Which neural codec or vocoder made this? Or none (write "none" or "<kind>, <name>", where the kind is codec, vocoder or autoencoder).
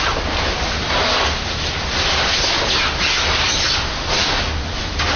none